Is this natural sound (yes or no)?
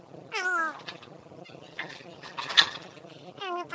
yes